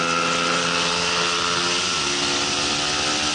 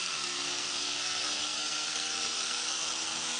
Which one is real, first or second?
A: first